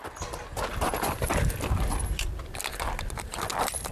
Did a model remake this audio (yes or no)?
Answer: no